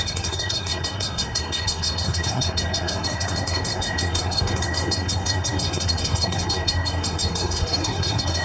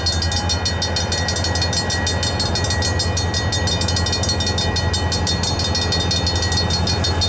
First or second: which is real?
second